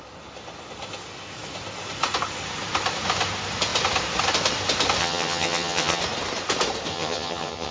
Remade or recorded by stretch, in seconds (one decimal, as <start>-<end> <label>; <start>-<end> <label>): 0.0-5.0 recorded; 5.0-6.0 remade; 6.0-6.9 recorded; 6.9-7.7 remade